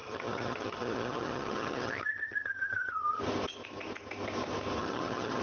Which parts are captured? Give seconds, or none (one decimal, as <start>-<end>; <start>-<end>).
3.2-4.8